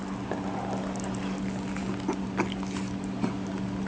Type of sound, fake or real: real